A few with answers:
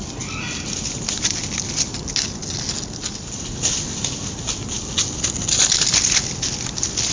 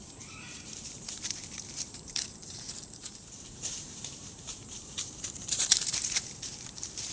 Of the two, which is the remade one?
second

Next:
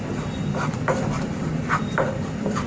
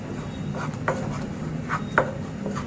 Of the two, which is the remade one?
first